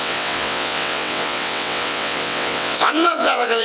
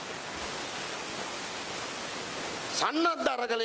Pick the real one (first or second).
second